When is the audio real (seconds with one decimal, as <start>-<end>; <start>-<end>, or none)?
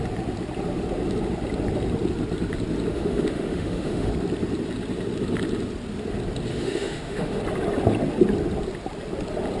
0.0-2.9; 4.1-6.5; 7.4-9.6